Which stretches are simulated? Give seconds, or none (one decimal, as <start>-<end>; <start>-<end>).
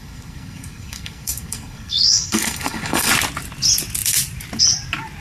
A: 0.0-3.1